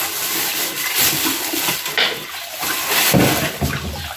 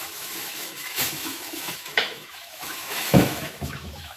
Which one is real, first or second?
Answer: first